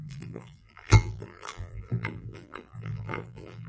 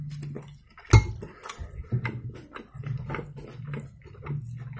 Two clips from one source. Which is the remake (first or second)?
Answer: first